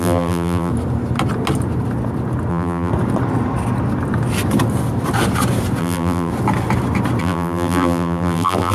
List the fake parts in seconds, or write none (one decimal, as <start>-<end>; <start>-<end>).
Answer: 0.0-0.7; 2.5-2.9; 5.8-6.3; 7.2-8.7